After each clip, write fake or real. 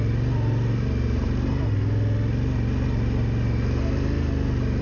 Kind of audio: real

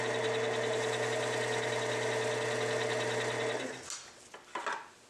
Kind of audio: real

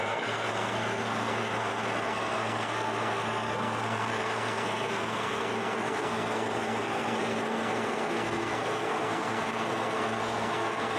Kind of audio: fake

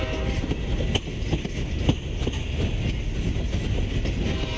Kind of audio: real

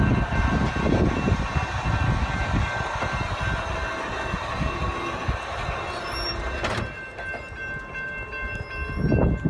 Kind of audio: real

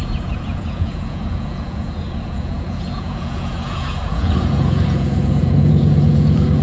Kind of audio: fake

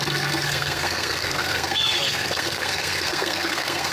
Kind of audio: fake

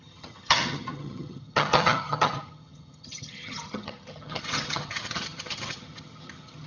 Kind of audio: fake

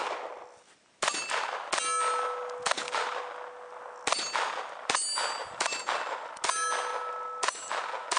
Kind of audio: real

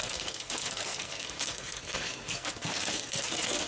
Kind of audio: fake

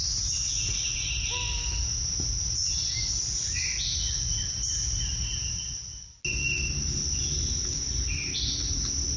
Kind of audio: real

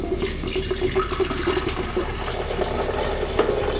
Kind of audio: fake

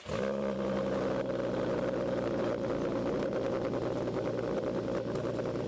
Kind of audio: real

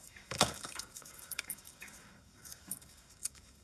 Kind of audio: fake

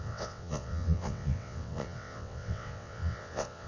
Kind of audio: fake